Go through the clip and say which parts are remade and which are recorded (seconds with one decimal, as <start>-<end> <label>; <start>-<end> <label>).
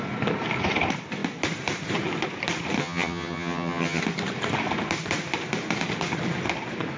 0.0-2.8 recorded; 2.8-4.0 remade; 4.0-7.0 recorded